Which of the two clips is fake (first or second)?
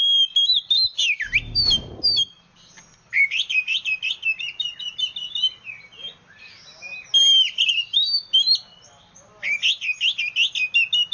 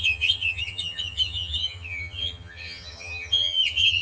second